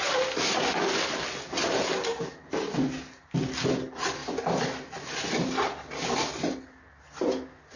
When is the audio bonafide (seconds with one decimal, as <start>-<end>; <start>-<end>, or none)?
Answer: 0.0-7.8